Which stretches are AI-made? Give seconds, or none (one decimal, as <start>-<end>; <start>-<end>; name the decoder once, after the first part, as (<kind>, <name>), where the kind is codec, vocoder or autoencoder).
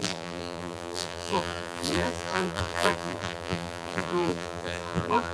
0.0-5.3 (vocoder, BigVGAN v2)